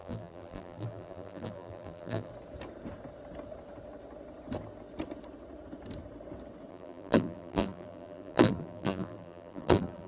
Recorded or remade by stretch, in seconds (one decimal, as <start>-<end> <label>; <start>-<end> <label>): 0.0-2.3 remade; 2.3-6.7 recorded; 6.7-10.1 remade